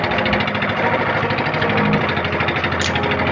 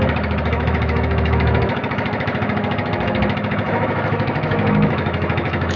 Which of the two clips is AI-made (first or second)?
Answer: second